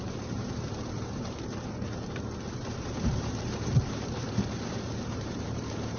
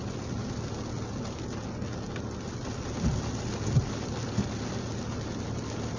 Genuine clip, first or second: second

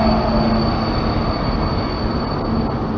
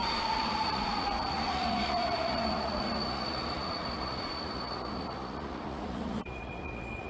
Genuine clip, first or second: first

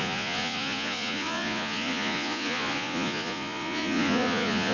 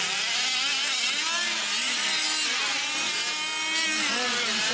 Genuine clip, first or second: second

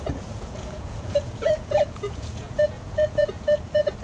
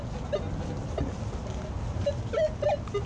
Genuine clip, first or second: second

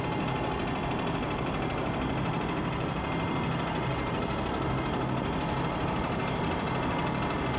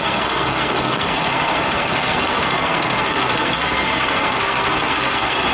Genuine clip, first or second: first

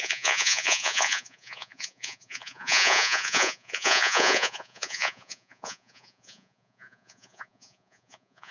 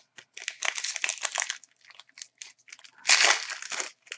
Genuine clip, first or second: second